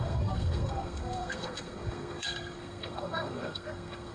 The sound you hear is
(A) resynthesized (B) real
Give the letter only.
A